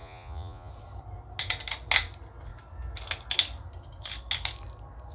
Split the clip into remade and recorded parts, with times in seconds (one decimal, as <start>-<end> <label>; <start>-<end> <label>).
0.0-0.7 remade; 0.7-5.1 recorded